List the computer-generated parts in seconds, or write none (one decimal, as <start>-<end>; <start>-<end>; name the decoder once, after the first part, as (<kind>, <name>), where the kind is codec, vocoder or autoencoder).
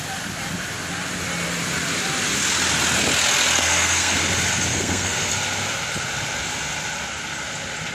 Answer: 3.6-4.2 (codec, SNAC); 4.7-5.3